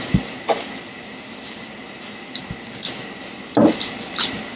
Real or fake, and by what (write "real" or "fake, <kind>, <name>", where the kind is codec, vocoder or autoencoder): fake, vocoder, BigVGAN v2